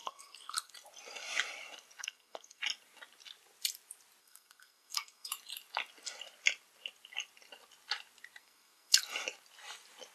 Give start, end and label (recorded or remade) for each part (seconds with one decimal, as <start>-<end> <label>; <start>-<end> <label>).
0.0-0.7 remade; 0.7-2.0 recorded; 2.0-2.6 remade; 2.6-4.2 recorded; 4.2-5.3 remade; 5.3-8.4 recorded; 8.4-9.0 remade; 9.0-10.1 recorded